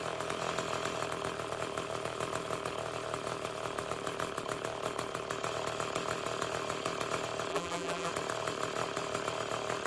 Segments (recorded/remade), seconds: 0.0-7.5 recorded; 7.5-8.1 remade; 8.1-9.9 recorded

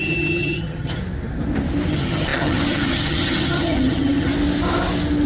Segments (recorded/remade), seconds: 0.0-1.0 remade; 1.0-1.9 recorded; 1.9-4.3 remade; 4.3-5.3 recorded

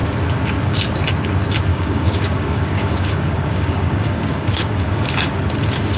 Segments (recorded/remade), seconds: 0.0-1.7 recorded; 1.7-5.3 remade; 5.3-6.0 recorded

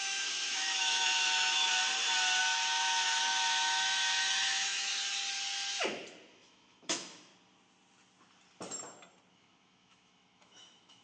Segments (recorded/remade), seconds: 0.0-1.8 remade; 1.8-2.4 recorded; 2.4-4.9 remade; 4.9-6.3 recorded; 6.3-7.3 remade; 7.3-9.3 recorded; 9.3-11.0 remade

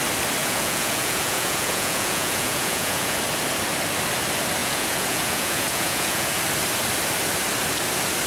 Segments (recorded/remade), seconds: 0.0-0.4 recorded; 0.4-3.2 remade; 3.2-4.6 recorded; 4.6-6.4 remade; 6.4-8.3 recorded

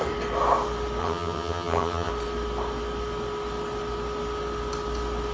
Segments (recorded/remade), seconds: 0.0-1.0 recorded; 1.0-2.1 remade; 2.1-5.3 recorded

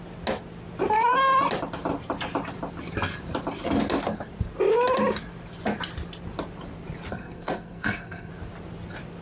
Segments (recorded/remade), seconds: 0.0-7.1 recorded; 7.1-8.3 remade; 8.3-9.2 recorded

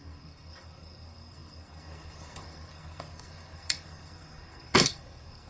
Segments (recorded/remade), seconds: 0.0-5.5 remade